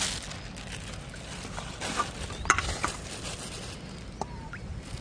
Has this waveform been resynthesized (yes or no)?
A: no